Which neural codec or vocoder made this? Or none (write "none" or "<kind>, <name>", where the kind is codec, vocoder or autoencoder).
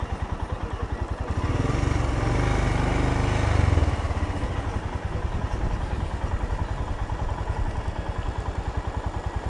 none